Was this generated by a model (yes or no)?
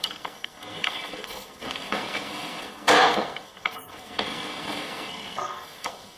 yes